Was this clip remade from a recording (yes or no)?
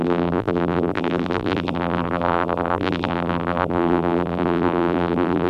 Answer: yes